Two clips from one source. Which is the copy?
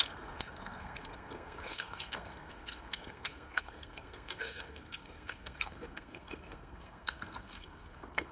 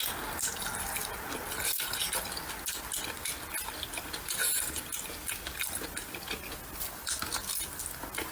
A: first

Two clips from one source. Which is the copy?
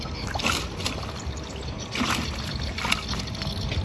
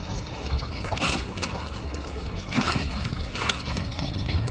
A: second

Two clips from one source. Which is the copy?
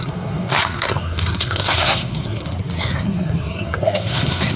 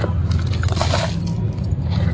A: first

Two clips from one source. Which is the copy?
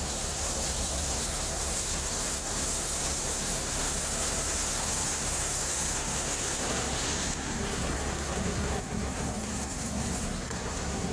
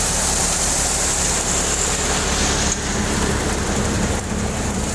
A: first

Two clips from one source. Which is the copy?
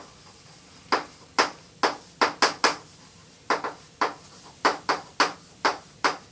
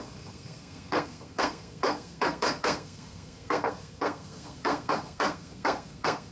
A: second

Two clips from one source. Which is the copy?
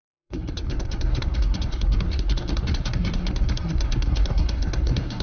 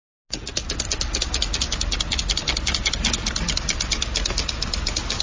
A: first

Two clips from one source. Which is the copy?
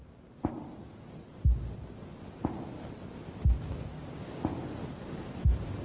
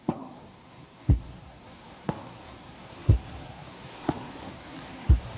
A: second